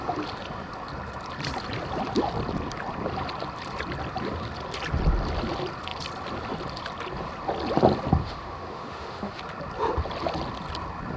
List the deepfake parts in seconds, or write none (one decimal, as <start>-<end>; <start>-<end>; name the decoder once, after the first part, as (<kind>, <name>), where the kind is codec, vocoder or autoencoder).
8.2-9.4 (autoencoder, DAC-VAE)

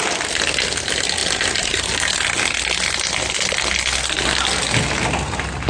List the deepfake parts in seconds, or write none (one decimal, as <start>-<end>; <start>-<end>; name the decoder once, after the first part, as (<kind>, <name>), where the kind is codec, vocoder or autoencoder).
none

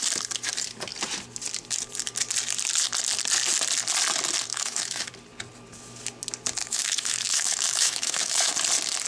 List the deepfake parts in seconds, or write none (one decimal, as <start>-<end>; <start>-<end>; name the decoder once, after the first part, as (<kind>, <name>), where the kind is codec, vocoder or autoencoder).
4.5-5.1 (autoencoder, DAC-VAE); 6.6-8.5